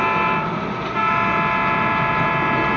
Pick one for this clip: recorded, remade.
recorded